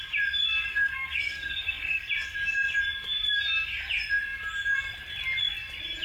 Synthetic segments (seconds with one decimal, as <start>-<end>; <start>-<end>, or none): 0.7-2.1